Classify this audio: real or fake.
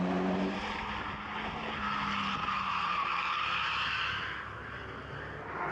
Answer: real